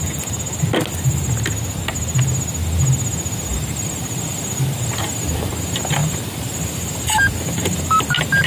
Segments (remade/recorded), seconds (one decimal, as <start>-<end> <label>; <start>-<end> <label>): 0.0-3.5 recorded; 3.5-5.5 remade; 5.5-6.0 recorded; 6.0-8.0 remade; 8.0-8.5 recorded